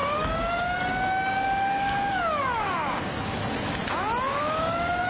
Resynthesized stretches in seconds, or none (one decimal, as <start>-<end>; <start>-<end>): 0.0-3.1; 4.3-5.1